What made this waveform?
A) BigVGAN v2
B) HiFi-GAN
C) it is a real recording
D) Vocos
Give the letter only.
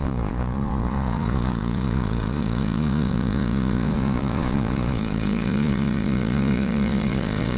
D